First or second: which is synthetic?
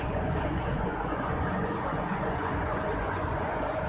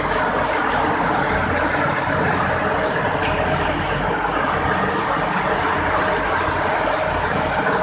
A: first